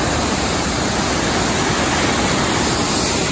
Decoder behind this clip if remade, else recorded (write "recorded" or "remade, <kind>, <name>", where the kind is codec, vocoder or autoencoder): recorded